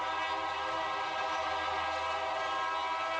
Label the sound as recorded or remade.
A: recorded